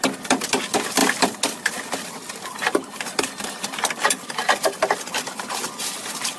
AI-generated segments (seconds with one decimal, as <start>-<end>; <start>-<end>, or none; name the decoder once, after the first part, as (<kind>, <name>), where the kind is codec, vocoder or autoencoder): none

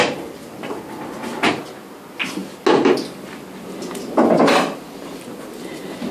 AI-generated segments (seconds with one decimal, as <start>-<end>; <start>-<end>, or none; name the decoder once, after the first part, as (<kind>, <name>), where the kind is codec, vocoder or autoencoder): none